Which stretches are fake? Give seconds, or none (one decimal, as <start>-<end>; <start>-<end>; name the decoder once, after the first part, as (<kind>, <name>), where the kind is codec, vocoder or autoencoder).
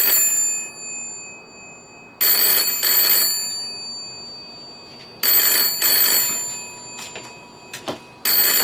none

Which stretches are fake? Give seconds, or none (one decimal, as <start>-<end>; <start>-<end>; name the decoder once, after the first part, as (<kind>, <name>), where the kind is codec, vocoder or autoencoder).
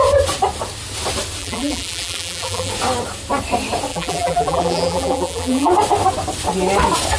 1.4-2.7 (vocoder, BigVGAN v2); 3.9-5.7